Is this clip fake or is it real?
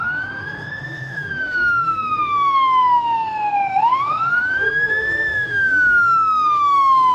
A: fake